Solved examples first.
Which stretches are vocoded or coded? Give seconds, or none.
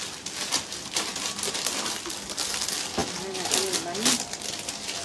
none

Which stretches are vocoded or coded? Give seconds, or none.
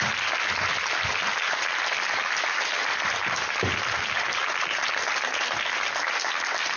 none